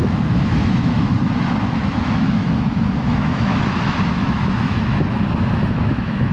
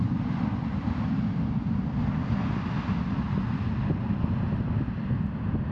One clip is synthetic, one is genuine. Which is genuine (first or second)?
second